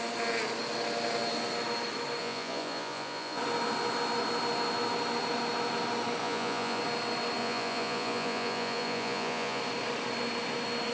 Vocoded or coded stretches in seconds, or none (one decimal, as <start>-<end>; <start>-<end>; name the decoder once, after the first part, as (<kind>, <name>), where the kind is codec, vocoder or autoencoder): 2.2-3.4 (vocoder, Vocos); 6.2-6.8; 7.4-9.6